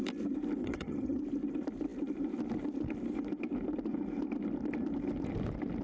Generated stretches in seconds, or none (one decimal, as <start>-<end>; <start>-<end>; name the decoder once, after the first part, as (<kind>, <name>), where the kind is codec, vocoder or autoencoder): 0.6-1.2 (vocoder, HiFi-GAN)